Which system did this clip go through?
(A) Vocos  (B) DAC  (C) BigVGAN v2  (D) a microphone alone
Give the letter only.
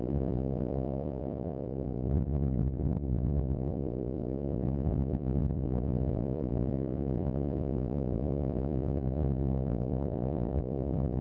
A